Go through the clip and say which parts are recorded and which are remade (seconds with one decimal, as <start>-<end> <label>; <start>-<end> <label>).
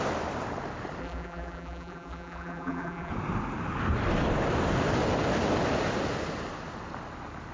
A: 0.0-1.0 recorded; 1.0-3.1 remade; 3.1-7.5 recorded